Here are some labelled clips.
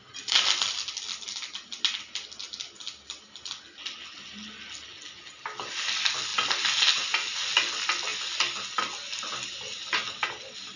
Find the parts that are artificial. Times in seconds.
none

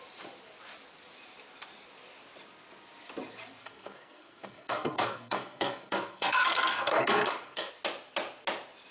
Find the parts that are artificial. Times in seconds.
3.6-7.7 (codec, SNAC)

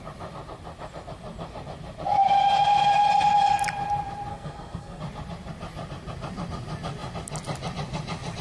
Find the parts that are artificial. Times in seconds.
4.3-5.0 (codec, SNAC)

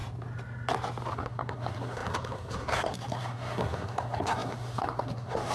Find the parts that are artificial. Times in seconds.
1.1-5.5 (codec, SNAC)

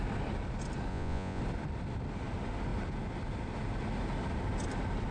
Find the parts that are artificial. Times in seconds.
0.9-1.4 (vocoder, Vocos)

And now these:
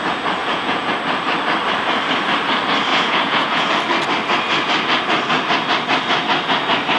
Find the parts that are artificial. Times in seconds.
0.4-0.9 (vocoder, Vocos); 2.9-3.7